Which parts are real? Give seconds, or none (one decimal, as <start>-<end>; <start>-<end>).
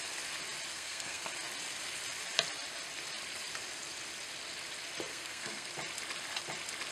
0.0-0.7; 1.2-5.1; 5.7-6.9